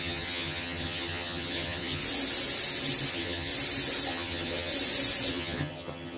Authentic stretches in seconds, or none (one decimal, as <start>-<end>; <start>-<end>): 2.0-3.1; 3.5-4.1; 4.7-5.3